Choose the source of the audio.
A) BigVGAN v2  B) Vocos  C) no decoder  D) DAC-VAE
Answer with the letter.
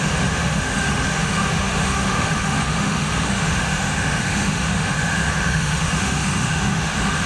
D